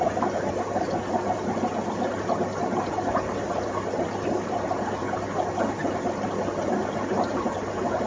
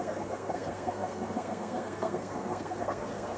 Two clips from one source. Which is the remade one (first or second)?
second